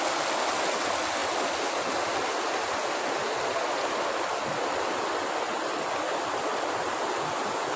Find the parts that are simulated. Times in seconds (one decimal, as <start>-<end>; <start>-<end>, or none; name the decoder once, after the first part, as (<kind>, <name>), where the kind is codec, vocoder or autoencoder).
none